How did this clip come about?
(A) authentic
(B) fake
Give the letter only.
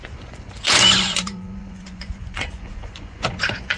B